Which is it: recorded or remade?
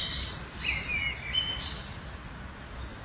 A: recorded